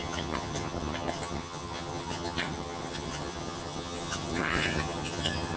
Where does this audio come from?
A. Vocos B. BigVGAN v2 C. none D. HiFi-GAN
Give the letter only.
D